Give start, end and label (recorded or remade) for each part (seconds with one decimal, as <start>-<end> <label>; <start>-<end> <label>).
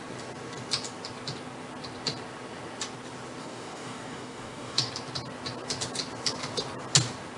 0.0-3.4 recorded; 3.4-4.9 remade; 4.9-7.4 recorded